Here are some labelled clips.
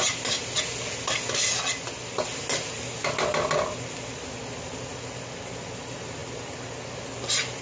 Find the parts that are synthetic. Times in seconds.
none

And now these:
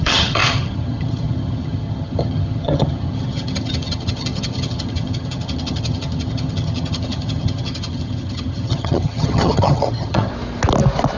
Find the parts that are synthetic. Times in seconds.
0.0-10.3

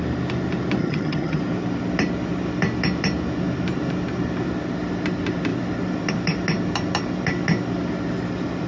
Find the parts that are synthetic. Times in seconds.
0.8-1.4

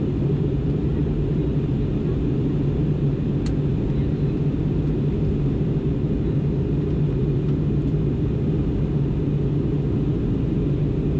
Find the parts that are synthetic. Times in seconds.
none

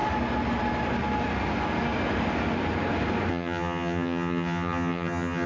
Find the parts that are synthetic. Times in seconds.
3.3-5.5

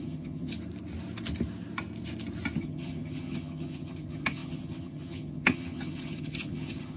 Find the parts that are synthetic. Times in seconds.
0.0-0.5; 2.6-7.0

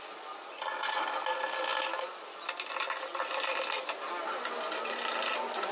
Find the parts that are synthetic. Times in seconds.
none